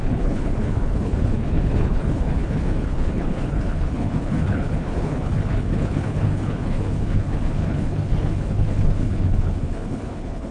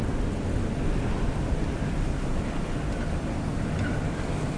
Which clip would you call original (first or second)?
second